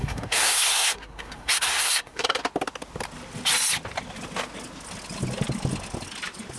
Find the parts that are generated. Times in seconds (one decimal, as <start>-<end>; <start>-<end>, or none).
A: 0.0-2.4